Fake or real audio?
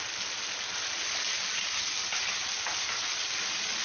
real